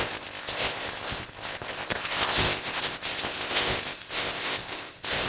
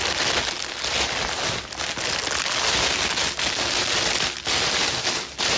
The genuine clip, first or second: second